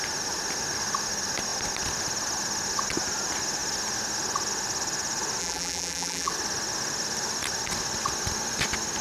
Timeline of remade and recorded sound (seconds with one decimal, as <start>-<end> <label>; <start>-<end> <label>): 0.0-5.4 recorded; 5.4-6.3 remade; 6.3-9.0 recorded